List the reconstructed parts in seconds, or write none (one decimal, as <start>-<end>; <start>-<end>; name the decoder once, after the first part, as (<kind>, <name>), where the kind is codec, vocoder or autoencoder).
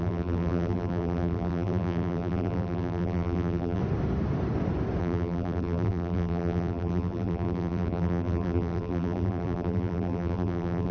0.0-3.8 (vocoder, BigVGAN v2); 5.0-10.9